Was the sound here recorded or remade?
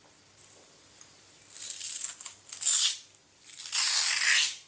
recorded